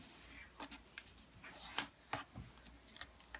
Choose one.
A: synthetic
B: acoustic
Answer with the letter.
B